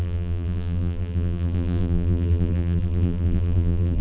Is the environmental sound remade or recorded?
remade